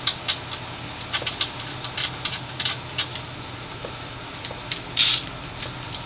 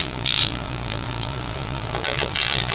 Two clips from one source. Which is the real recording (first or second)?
first